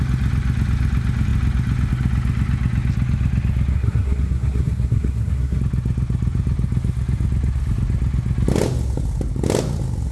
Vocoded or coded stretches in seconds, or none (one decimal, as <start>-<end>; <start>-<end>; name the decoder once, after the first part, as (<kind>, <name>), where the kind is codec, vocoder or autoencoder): 3.7-5.6 (codec, SNAC)